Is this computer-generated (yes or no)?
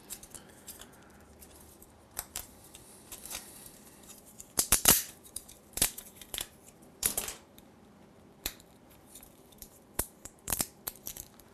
yes